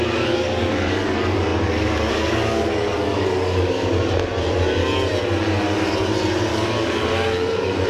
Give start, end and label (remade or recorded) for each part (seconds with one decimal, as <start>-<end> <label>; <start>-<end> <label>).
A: 0.0-4.3 remade; 4.3-6.5 recorded; 6.5-7.9 remade